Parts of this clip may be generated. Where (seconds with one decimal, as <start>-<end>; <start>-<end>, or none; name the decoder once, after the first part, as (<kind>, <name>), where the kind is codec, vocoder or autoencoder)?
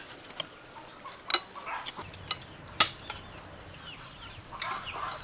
none